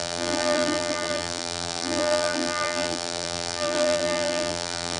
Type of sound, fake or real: fake